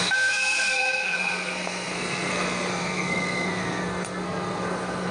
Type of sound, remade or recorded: remade